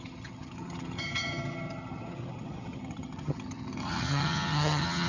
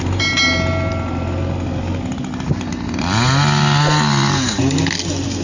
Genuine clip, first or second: second